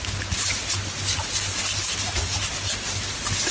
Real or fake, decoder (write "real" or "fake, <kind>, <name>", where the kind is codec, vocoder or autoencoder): real